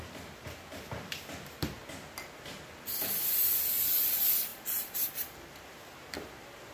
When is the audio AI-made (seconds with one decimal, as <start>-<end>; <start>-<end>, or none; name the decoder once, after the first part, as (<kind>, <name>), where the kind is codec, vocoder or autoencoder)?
0.0-1.8 (vocoder, BigVGAN v2); 3.3-6.7